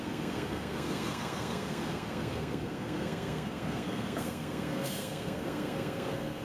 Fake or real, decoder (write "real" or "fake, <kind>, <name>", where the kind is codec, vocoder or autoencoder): fake, codec, SNAC